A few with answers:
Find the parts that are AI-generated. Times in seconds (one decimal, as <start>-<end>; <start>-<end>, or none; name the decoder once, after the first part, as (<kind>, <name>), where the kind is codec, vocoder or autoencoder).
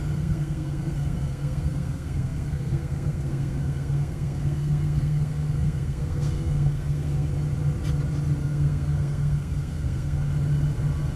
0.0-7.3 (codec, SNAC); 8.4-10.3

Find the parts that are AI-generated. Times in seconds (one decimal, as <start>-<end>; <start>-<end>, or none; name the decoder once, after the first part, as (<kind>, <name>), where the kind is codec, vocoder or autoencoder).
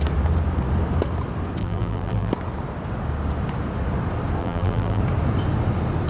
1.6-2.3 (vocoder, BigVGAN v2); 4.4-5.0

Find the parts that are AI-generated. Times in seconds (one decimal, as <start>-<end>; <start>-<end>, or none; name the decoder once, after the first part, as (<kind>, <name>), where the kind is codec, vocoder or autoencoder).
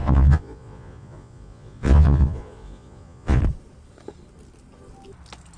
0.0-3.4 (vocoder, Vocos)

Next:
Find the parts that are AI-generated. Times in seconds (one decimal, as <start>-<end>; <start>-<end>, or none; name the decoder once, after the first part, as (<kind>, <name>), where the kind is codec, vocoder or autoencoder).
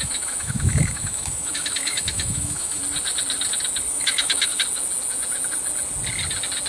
0.0-2.8 (autoencoder, DAC-VAE); 3.9-4.5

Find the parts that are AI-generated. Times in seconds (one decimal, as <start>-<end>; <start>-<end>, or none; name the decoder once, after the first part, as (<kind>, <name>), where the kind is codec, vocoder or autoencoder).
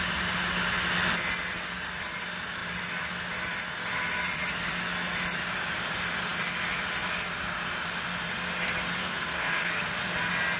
9.0-9.7 (codec, SNAC)